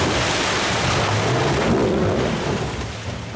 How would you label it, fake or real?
real